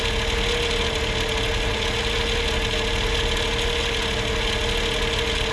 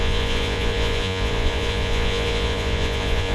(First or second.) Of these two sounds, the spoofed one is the second